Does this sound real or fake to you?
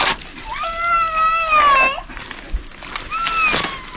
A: real